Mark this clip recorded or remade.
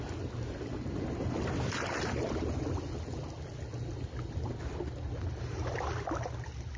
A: recorded